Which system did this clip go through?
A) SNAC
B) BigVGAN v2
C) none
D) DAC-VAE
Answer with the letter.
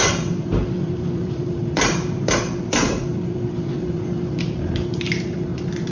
B